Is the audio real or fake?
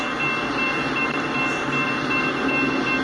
real